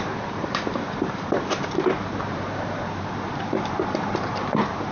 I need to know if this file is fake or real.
fake